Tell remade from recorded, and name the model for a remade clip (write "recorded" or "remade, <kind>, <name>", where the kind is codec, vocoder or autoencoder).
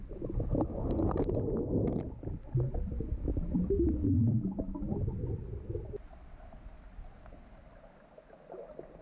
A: recorded